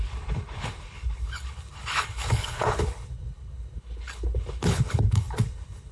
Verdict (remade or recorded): remade